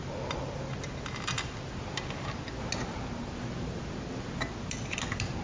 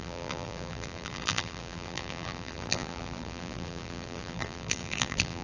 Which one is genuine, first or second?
first